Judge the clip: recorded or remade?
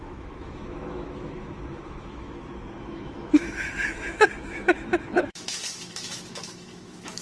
remade